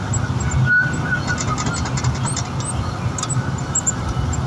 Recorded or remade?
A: recorded